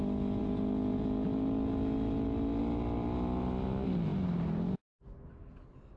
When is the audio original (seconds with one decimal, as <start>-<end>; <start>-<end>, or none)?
0.0-6.0